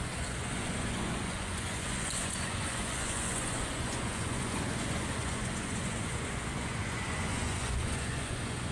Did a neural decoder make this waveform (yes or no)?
yes